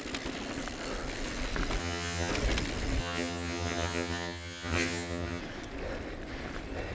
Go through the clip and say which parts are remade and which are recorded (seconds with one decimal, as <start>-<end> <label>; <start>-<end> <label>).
0.0-1.8 recorded; 1.8-2.3 remade; 2.3-3.0 recorded; 3.0-5.4 remade; 5.4-6.9 recorded